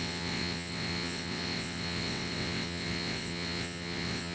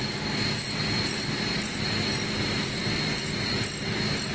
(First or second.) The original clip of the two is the second